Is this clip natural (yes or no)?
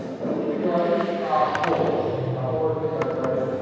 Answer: yes